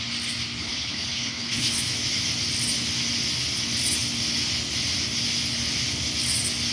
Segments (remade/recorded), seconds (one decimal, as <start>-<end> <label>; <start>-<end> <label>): 0.0-0.6 recorded; 0.6-1.8 remade; 1.8-6.7 recorded

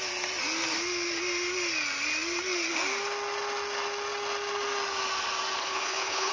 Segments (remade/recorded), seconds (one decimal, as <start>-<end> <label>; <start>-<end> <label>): 0.0-5.6 recorded; 5.6-6.3 remade

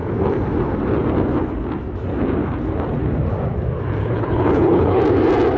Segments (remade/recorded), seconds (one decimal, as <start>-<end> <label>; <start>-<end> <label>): 0.0-4.0 recorded; 4.0-5.0 remade; 5.0-5.6 recorded

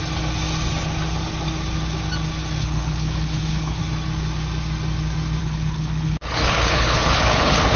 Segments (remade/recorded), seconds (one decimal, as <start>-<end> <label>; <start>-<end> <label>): 0.0-2.6 recorded; 2.6-3.8 remade; 3.8-5.4 recorded; 5.4-7.8 remade

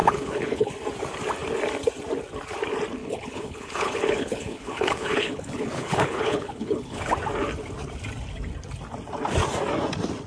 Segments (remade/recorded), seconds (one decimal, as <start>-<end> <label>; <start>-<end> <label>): 0.0-0.7 remade; 0.7-3.0 recorded; 3.0-7.1 remade; 7.1-10.3 recorded

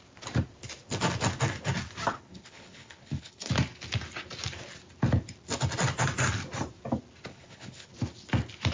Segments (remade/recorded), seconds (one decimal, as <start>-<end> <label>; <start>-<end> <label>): 0.0-2.1 recorded; 2.1-3.5 remade; 3.5-7.3 recorded; 7.3-7.9 remade; 7.9-8.7 recorded

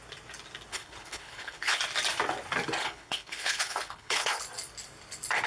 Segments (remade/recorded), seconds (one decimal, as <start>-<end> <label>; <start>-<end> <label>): 0.0-0.7 recorded; 0.7-1.8 remade; 1.8-2.8 recorded; 2.8-4.4 remade; 4.4-5.5 recorded